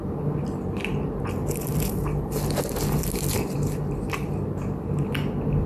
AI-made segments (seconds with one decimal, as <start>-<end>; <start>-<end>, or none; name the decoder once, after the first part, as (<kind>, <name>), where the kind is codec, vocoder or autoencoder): 1.4-4.8 (vocoder, BigVGAN v2)